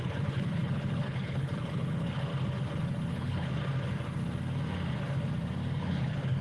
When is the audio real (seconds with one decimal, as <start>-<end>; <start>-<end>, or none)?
2.3-3.1; 3.5-5.8